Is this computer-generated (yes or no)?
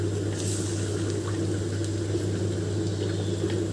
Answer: no